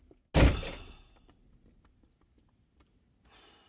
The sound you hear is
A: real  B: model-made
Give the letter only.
A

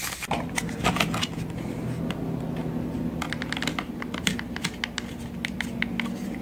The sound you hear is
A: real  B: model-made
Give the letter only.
A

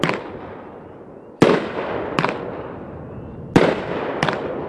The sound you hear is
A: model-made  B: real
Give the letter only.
B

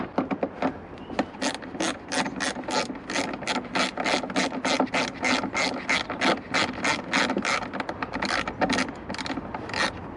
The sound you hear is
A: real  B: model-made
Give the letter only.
A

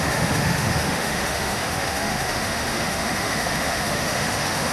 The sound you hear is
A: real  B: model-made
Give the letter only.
B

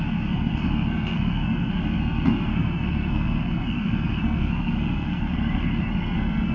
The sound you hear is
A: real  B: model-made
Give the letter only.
B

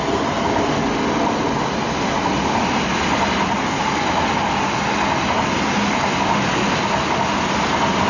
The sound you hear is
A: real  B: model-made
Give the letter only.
A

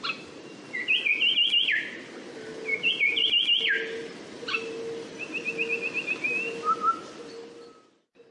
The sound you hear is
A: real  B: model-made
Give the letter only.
A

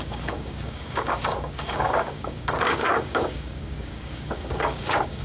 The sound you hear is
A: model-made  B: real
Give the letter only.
A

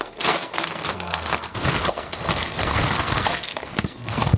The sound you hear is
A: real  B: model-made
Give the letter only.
B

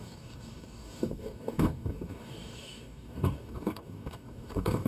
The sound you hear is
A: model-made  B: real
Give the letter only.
A